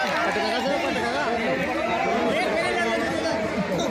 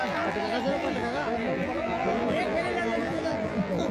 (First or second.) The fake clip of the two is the second